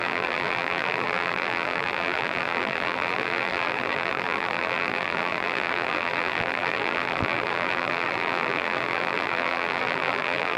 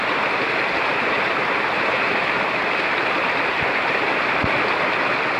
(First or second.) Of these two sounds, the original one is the second